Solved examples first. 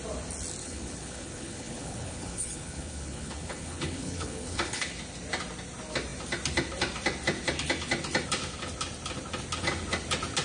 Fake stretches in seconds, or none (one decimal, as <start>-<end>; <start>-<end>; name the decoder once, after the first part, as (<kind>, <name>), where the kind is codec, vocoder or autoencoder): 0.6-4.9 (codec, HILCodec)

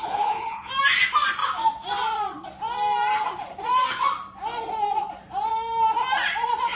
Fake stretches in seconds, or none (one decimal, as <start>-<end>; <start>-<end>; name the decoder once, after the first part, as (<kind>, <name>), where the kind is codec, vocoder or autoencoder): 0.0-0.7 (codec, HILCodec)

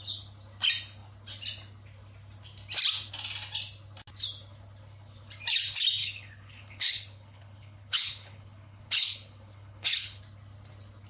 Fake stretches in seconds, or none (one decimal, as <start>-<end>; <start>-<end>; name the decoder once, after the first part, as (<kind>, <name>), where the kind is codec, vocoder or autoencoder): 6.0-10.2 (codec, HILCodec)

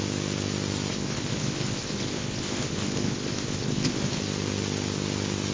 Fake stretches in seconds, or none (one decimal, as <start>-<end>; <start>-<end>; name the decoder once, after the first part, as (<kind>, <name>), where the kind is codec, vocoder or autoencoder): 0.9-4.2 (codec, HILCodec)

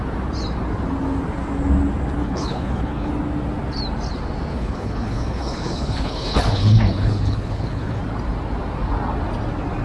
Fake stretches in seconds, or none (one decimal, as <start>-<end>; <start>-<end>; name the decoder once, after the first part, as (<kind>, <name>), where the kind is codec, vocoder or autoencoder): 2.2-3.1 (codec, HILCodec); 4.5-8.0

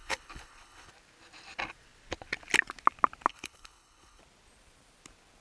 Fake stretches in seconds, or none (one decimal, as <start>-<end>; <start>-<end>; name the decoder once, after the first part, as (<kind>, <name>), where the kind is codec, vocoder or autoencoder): 0.0-0.9 (codec, HILCodec); 3.3-4.2

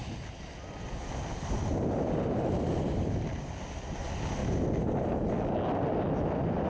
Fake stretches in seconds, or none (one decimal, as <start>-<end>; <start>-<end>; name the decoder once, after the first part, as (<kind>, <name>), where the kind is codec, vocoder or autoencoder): none